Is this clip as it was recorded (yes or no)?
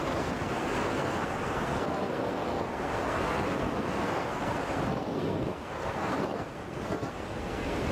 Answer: no